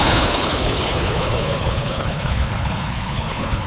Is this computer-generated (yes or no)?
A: yes